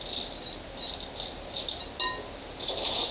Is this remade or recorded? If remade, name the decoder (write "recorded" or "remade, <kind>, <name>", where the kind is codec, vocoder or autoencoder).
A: recorded